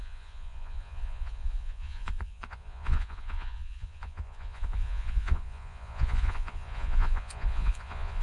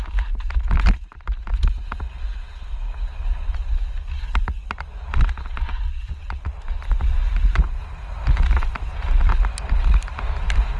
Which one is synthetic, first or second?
first